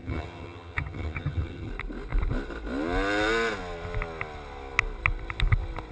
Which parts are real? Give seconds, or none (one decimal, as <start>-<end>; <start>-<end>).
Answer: 1.7-5.9